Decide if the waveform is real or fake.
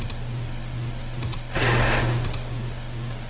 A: real